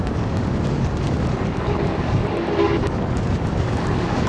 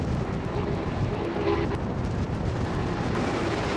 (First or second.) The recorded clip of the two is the second